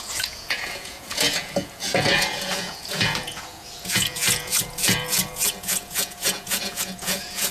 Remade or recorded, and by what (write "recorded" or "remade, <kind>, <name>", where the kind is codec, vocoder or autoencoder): remade, vocoder, Vocos